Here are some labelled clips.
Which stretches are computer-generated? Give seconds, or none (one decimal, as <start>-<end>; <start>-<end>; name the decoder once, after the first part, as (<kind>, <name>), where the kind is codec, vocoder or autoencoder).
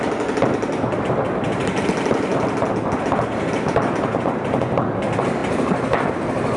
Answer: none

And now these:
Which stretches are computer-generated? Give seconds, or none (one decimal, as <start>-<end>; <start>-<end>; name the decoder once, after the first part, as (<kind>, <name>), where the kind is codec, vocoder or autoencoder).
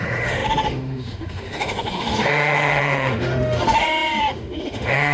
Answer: 0.0-5.1 (autoencoder, DAC-VAE)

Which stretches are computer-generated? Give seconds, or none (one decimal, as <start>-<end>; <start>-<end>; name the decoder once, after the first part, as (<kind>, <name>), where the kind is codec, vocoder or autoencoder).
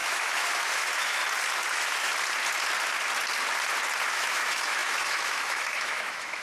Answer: 0.0-1.2 (autoencoder, DAC-VAE); 1.7-2.1; 4.1-6.4